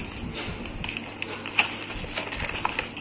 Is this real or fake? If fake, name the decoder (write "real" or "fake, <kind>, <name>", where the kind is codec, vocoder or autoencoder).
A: real